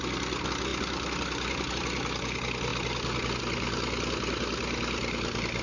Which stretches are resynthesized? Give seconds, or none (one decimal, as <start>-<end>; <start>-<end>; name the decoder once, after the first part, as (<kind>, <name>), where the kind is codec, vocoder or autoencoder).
none